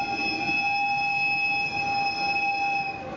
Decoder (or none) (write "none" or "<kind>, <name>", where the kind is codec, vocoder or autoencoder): none